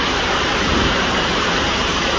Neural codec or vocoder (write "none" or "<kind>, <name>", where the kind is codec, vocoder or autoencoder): vocoder, BigVGAN v2